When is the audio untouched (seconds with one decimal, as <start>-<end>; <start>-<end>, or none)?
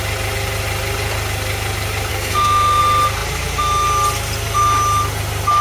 0.0-2.1; 2.8-5.6